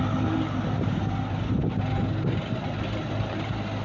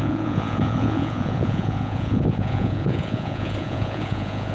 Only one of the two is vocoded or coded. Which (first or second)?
second